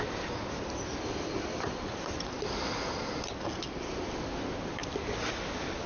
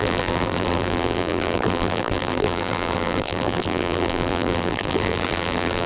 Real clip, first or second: first